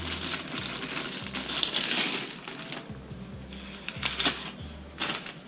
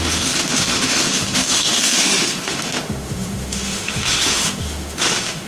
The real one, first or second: first